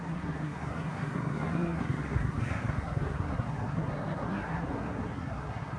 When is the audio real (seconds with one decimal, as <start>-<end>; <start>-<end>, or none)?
none